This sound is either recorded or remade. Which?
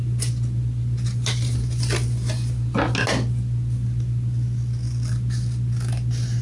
recorded